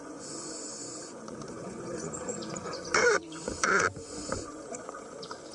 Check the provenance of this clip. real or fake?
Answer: fake